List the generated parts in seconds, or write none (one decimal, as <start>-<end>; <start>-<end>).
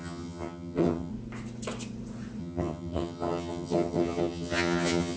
0.0-1.1; 2.4-5.2